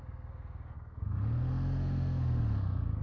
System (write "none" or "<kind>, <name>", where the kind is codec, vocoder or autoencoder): codec, SNAC